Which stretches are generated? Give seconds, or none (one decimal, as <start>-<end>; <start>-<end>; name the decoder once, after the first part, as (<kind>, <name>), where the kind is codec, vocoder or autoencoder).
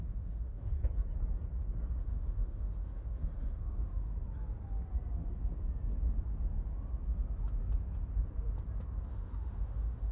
0.0-0.7 (autoencoder, DAC-VAE); 2.0-4.1; 9.1-10.1